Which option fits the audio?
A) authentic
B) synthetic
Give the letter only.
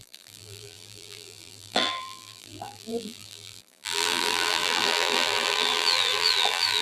B